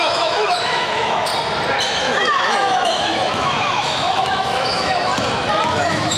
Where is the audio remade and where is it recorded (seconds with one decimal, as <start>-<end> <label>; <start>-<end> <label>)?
0.0-1.3 remade; 1.3-2.0 recorded; 2.0-5.1 remade; 5.1-5.7 recorded; 5.7-6.2 remade